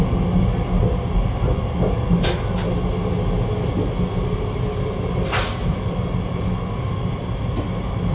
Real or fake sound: real